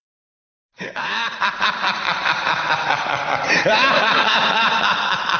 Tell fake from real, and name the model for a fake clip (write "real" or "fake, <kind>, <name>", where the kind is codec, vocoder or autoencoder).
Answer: fake, vocoder, BigVGAN v2